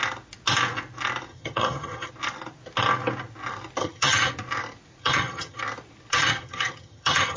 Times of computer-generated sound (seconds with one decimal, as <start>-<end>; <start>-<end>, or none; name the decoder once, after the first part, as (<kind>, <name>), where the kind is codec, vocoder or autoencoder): 1.3-2.1 (vocoder, HiFi-GAN); 3.8-4.3; 5.0-5.6; 6.1-7.4